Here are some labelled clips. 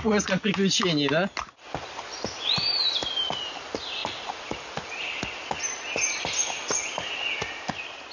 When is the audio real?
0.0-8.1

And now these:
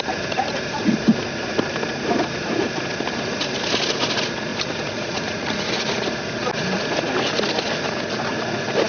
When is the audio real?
0.0-4.5; 5.7-8.9

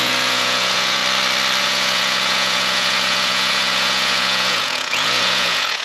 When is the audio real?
1.0-1.6

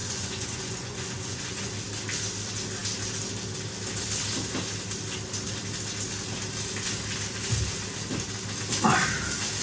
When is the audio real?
1.7-9.6

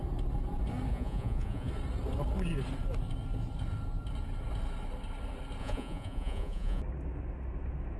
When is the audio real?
0.0-0.9; 1.7-5.6; 6.8-8.0

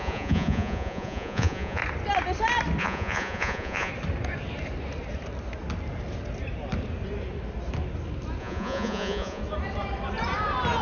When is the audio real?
1.8-2.8; 3.9-8.4; 9.4-10.8

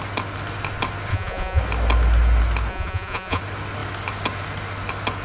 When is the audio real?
0.0-1.1; 1.6-2.7; 3.4-5.2